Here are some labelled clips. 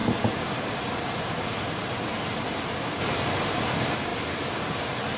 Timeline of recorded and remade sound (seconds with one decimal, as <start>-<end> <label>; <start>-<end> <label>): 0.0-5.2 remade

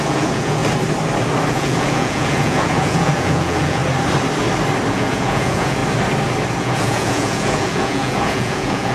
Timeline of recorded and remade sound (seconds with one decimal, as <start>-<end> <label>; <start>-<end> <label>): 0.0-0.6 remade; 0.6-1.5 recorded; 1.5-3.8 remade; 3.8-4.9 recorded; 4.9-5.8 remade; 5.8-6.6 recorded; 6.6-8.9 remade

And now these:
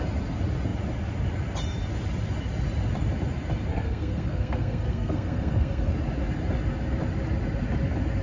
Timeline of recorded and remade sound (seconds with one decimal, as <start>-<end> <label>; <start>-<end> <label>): 0.0-3.7 recorded; 3.7-5.9 remade; 5.9-8.2 recorded

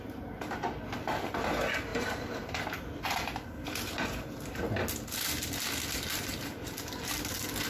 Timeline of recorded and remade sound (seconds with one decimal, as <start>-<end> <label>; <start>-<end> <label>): 0.0-1.9 recorded; 1.9-2.6 remade; 2.6-6.1 recorded; 6.1-7.0 remade; 7.0-7.7 recorded